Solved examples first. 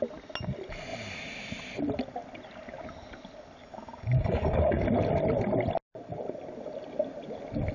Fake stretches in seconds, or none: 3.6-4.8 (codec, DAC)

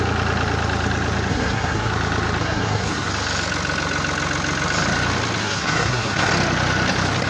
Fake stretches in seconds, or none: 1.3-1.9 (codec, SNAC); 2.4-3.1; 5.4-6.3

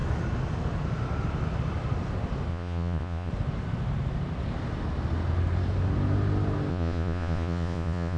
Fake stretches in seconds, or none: 2.5-3.3 (vocoder, Vocos); 6.7-8.2

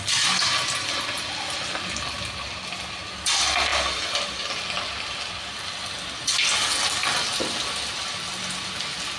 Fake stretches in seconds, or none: none